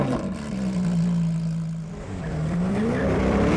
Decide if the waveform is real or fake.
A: fake